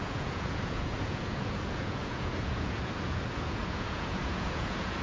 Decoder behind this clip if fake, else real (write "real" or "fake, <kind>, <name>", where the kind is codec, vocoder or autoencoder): fake, vocoder, Vocos